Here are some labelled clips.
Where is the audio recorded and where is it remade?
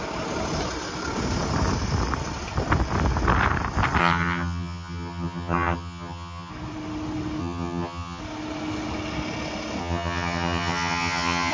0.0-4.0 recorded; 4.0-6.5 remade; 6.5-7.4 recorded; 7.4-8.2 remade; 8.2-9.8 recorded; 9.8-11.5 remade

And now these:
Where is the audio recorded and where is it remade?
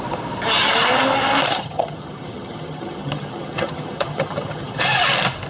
0.0-1.5 recorded; 1.5-4.8 remade; 4.8-5.5 recorded